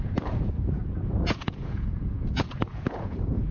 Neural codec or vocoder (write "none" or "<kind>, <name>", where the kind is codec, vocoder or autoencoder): vocoder, Vocos